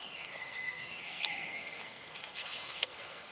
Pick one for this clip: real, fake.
fake